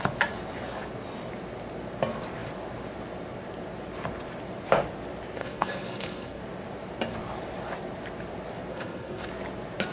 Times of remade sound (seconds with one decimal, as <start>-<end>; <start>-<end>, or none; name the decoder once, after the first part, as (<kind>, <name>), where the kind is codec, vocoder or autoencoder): 5.4-6.4 (codec, SNAC); 8.7-9.3